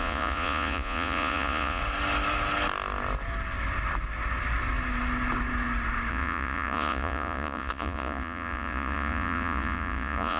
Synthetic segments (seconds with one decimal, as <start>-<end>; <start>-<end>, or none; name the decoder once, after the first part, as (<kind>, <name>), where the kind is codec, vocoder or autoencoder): 0.0-1.8 (vocoder, Vocos); 6.1-10.4